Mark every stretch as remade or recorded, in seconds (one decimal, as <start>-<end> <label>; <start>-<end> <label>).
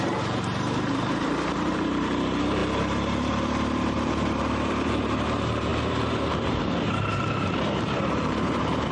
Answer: 0.0-8.9 remade